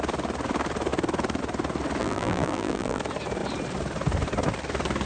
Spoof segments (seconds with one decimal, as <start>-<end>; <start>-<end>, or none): 2.0-3.0